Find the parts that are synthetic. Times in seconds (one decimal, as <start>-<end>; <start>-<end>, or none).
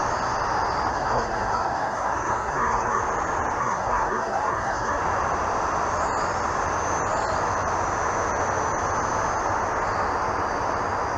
0.9-3.0; 3.6-5.0